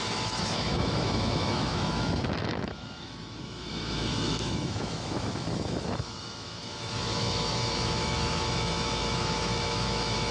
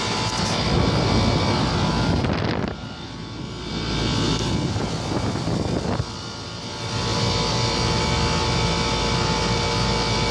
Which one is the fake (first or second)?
first